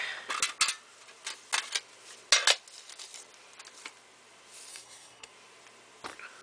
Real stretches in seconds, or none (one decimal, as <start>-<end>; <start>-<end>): 0.0-4.7; 5.3-6.4